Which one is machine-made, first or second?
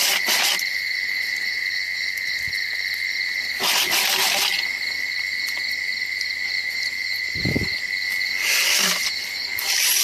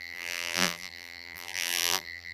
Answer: second